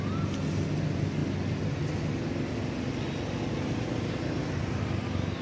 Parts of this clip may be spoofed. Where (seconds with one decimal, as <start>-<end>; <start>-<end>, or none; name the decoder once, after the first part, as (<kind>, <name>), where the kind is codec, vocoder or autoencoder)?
none